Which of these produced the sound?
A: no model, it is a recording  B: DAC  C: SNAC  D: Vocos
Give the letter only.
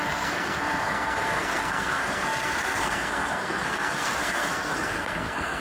C